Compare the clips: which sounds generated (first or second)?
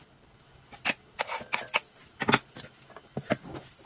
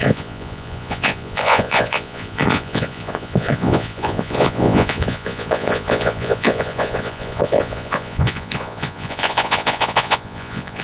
second